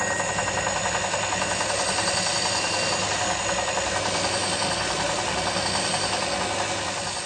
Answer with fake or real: real